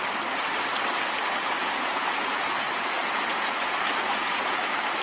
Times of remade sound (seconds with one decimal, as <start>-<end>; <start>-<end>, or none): 1.6-4.6